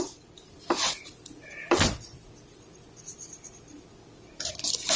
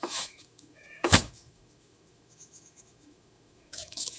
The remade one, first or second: second